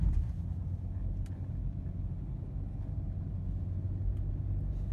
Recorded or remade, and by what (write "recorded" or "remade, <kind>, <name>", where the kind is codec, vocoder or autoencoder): recorded